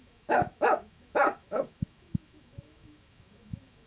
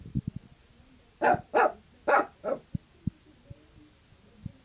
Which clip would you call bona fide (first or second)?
second